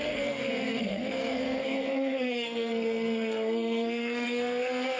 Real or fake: fake